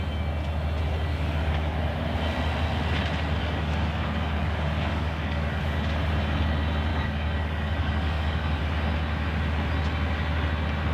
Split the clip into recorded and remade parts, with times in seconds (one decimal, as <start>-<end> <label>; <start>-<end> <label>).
0.0-1.1 recorded; 1.1-1.9 remade; 1.9-3.4 recorded; 3.4-5.6 remade; 5.6-6.9 recorded; 6.9-8.6 remade; 8.6-10.9 recorded